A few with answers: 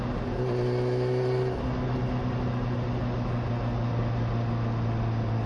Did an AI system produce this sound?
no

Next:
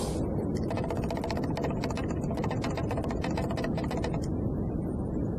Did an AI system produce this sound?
no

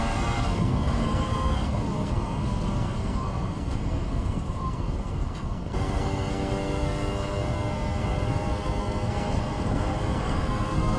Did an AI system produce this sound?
yes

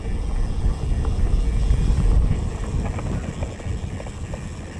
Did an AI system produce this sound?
no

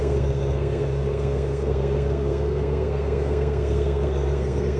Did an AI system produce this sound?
yes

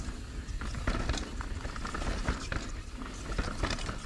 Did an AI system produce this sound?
no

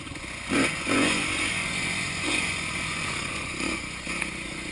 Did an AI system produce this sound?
yes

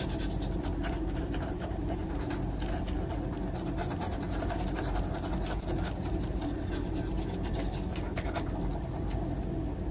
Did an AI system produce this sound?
no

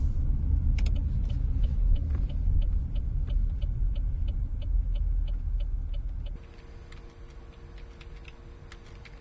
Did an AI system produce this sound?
no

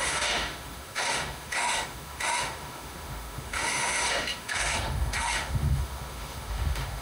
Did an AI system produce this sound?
yes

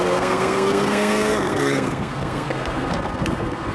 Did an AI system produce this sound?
yes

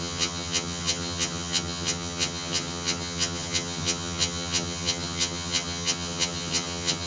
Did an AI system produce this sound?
yes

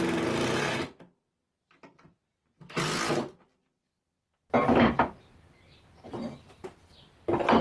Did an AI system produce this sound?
no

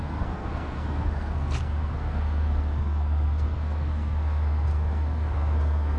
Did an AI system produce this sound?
yes